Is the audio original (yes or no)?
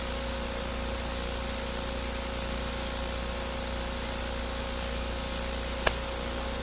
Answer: yes